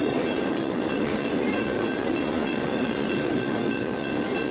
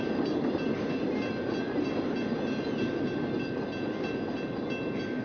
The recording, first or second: second